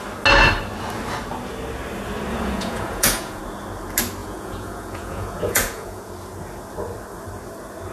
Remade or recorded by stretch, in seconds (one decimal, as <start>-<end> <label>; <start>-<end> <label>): 0.0-2.3 recorded; 2.3-3.4 remade; 3.4-4.2 recorded; 4.2-6.0 remade; 6.0-7.9 recorded